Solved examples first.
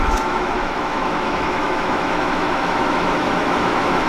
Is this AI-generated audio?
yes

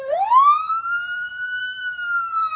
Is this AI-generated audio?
yes